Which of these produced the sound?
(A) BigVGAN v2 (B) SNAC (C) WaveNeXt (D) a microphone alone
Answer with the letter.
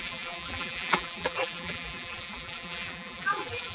A